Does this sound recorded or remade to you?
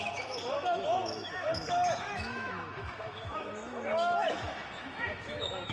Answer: remade